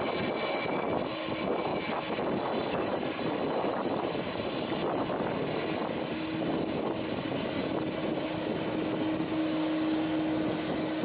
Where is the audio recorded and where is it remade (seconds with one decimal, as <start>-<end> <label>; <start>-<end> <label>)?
0.0-11.0 recorded